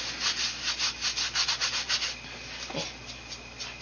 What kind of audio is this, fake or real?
real